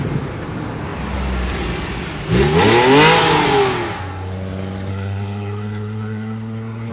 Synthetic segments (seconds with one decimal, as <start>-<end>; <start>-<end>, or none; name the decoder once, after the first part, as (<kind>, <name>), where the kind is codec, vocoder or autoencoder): 4.9-6.9 (codec, SNAC)